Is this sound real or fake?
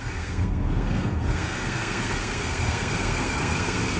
fake